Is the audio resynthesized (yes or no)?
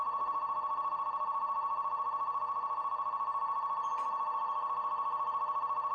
no